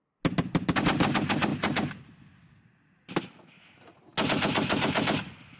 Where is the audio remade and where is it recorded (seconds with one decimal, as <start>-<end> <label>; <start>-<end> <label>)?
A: 0.0-5.6 recorded